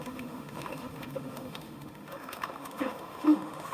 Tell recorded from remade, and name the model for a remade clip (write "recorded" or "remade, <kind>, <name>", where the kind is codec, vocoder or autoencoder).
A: remade, autoencoder, DAC-VAE